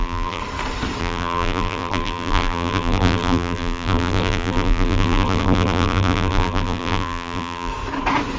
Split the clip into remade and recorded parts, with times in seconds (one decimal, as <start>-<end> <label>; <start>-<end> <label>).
0.0-0.4 remade; 0.4-1.0 recorded; 1.0-7.7 remade; 7.7-8.4 recorded